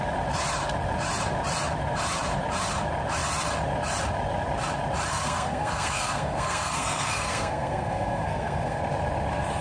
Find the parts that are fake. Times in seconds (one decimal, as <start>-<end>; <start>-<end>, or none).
5.1-8.8

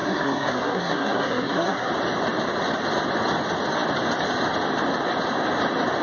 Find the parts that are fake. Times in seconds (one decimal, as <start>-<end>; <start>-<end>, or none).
0.0-1.9

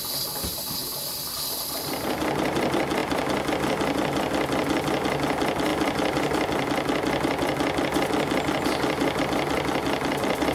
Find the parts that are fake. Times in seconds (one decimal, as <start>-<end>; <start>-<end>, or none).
none

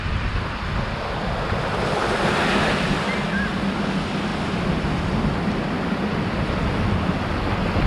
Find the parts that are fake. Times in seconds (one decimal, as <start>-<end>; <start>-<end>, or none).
none

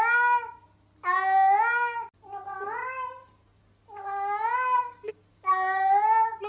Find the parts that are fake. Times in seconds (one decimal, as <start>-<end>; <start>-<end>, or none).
none